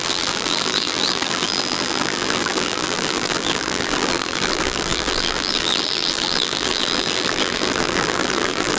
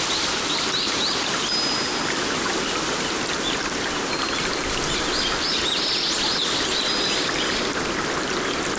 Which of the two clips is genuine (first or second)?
second